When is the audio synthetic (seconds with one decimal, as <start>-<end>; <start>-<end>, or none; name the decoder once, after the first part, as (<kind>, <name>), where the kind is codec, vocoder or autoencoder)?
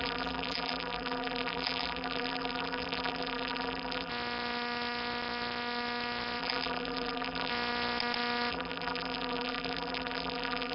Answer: 0.0-4.1 (vocoder, BigVGAN v2); 6.4-7.5; 8.5-10.7